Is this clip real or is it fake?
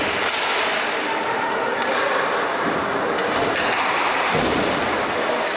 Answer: real